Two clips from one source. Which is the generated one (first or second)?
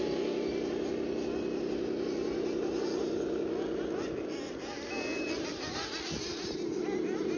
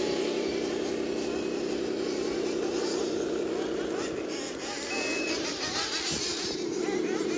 second